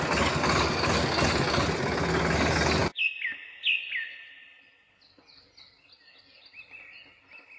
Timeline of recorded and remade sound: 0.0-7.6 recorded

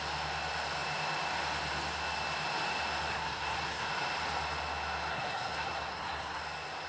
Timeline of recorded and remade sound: 0.0-3.1 recorded; 3.1-3.9 remade; 3.9-5.1 recorded; 5.1-6.4 remade; 6.4-6.9 recorded

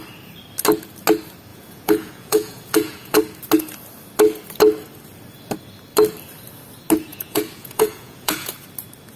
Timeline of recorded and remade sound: 0.0-1.5 recorded; 1.5-3.2 remade; 3.2-7.1 recorded; 7.1-8.5 remade; 8.5-9.2 recorded

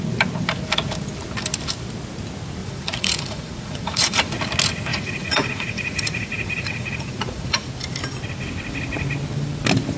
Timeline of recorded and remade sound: 0.0-2.6 recorded; 2.6-4.3 remade; 4.3-4.9 recorded; 4.9-7.7 remade; 7.7-10.0 recorded

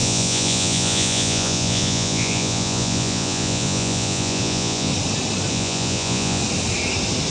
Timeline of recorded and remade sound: 0.0-4.9 remade; 4.9-5.5 recorded; 5.5-6.4 remade; 6.4-7.3 recorded

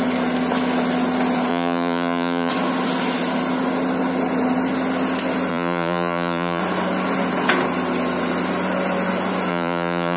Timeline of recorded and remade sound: 0.0-1.5 recorded; 1.5-2.5 remade; 2.5-5.5 recorded; 5.5-6.6 remade; 6.6-9.5 recorded; 9.5-10.2 remade

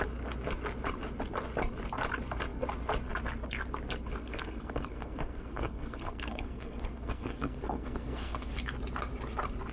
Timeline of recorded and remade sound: 0.0-4.2 recorded; 4.2-8.5 remade; 8.5-9.7 recorded

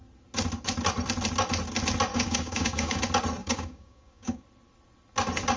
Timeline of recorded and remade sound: 0.0-2.1 recorded; 2.1-3.0 remade; 3.0-3.4 recorded; 3.4-4.4 remade; 4.4-5.6 recorded